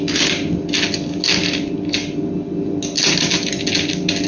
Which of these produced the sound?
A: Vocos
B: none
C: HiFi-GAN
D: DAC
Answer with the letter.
B